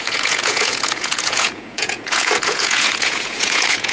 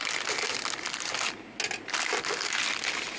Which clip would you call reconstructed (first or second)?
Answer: first